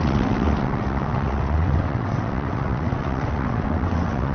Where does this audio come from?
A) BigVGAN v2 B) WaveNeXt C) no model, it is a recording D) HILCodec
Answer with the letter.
B